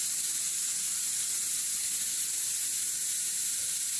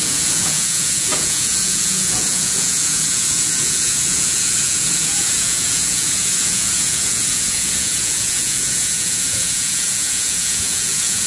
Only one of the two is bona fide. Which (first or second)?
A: first